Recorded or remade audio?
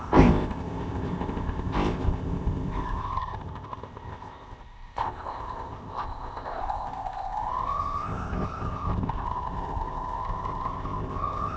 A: remade